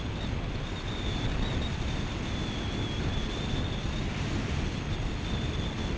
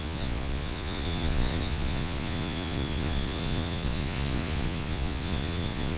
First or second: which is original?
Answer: first